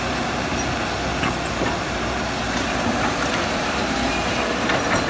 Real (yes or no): no